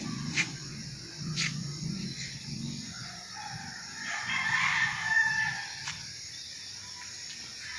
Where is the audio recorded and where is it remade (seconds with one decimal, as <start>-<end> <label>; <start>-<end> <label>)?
0.0-5.6 remade; 5.6-7.8 recorded